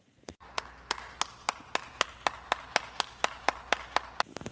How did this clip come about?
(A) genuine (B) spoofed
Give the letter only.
A